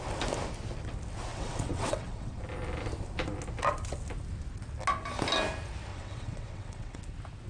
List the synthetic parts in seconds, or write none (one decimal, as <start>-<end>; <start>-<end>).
1.3-2.4; 5.9-7.0